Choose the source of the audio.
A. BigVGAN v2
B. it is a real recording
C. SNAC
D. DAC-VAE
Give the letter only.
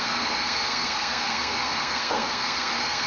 C